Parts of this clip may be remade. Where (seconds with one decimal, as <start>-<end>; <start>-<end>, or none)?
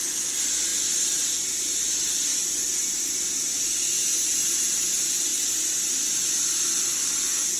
0.0-0.7; 1.7-5.3